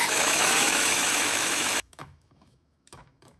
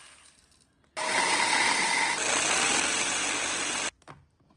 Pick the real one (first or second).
second